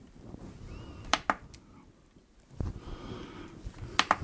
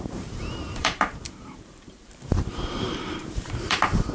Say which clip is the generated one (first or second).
second